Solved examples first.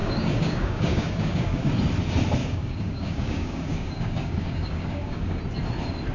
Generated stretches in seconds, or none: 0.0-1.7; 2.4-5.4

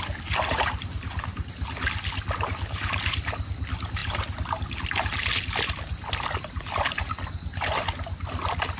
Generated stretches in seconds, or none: none

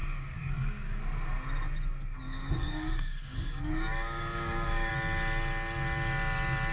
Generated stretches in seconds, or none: 0.0-1.0; 2.4-4.9

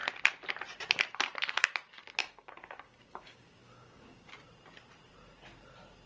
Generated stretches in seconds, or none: 2.2-4.3

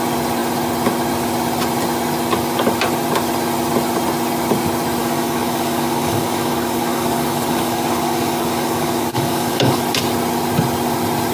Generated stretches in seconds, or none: 5.0-9.8